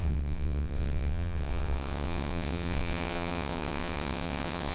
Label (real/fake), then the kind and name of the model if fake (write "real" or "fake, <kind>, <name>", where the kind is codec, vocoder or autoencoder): fake, vocoder, WaveNeXt